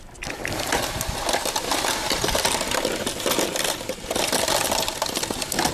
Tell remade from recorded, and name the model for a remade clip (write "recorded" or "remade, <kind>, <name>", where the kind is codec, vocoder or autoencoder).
recorded